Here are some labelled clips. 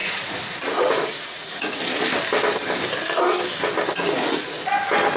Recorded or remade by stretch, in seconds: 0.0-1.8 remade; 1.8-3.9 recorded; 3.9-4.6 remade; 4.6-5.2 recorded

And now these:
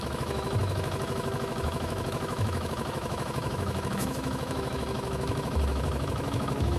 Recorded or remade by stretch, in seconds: 0.0-6.8 remade

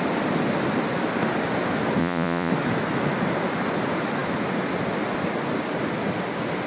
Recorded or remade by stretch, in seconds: 0.0-2.0 recorded; 2.0-2.5 remade; 2.5-6.7 recorded

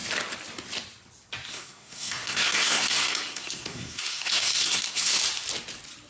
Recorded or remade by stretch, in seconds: 0.0-1.5 recorded; 1.5-5.2 remade; 5.2-6.1 recorded

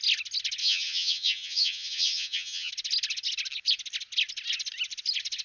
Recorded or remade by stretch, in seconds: 0.0-0.6 recorded; 0.6-2.7 remade; 2.7-5.4 recorded